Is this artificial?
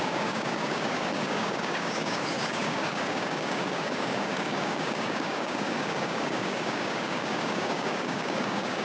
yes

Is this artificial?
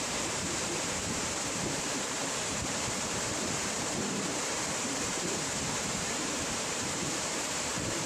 yes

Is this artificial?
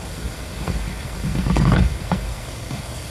yes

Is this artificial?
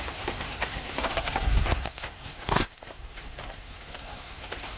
yes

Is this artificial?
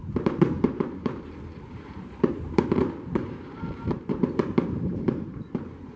yes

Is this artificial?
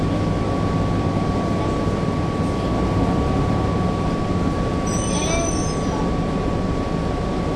no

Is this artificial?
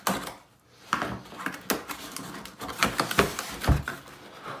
no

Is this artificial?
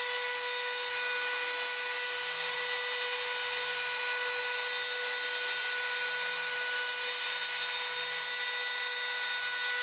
no